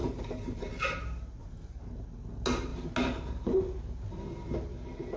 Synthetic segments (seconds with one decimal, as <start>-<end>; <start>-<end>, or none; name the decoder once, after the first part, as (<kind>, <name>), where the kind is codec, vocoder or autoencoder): 0.0-0.6 (vocoder, BigVGAN v2); 1.4-2.0